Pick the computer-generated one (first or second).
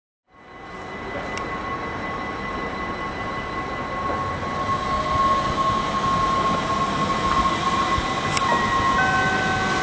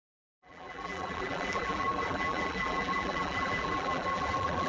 second